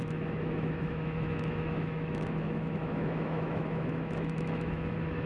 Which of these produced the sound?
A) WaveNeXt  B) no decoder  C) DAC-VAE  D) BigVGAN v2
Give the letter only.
C